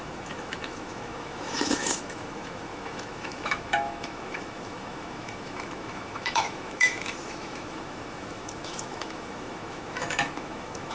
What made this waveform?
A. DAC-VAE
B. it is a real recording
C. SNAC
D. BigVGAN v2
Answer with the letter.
A